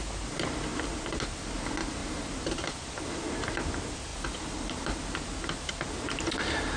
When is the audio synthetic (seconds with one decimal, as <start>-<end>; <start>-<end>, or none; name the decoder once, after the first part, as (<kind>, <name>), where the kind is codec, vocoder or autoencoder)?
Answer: 2.0-2.7 (vocoder, BigVGAN v2); 4.1-5.0